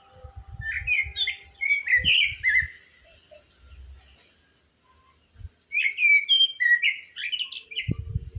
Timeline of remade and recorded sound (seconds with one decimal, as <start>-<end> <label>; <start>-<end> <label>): 0.0-8.4 recorded